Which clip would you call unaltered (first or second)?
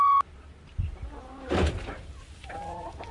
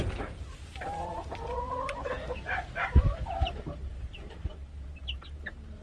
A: first